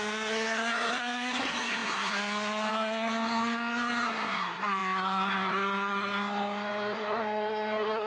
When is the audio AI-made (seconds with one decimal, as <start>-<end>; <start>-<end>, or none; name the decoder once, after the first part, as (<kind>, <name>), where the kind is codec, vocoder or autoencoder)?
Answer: 0.0-8.1 (codec, SNAC)